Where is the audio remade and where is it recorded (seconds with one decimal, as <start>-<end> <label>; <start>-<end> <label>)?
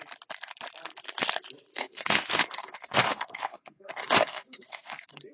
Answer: 0.0-1.7 recorded; 1.7-5.3 remade